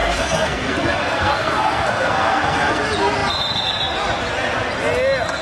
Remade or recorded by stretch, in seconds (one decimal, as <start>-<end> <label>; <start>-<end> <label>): 0.0-2.8 remade; 2.8-5.4 recorded